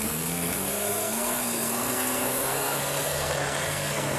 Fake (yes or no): yes